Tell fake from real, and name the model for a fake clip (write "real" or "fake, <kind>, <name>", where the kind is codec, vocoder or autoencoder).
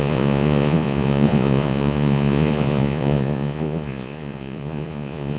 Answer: fake, vocoder, Vocos